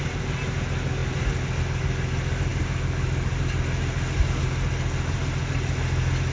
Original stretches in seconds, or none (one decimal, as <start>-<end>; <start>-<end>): 0.0-6.3